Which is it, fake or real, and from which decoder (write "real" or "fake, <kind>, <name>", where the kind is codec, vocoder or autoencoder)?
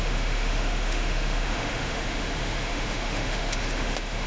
fake, autoencoder, DAC-VAE